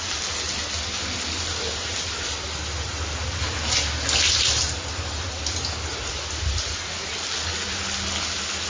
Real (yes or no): yes